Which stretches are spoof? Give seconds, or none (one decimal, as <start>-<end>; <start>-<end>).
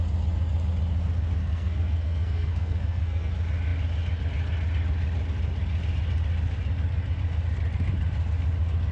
1.4-3.3